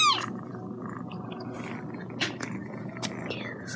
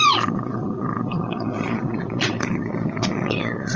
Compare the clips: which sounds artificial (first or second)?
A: second